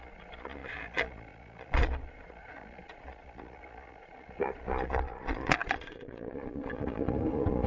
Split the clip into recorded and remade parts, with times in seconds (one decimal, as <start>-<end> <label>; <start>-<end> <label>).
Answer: 0.0-7.7 remade